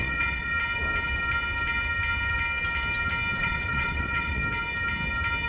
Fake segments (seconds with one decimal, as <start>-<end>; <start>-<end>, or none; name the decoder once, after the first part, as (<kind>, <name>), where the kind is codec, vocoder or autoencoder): 0.0-0.5 (vocoder, WaveNeXt); 3.4-4.4